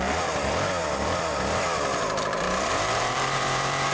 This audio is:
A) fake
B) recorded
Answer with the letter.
A